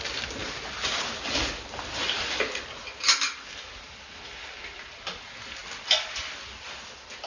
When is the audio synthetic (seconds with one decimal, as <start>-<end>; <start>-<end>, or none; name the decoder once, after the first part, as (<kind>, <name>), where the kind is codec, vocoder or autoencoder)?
none